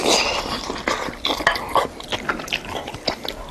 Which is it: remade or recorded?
recorded